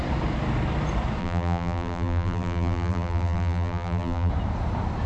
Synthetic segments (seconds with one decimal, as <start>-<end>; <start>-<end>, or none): 1.2-4.3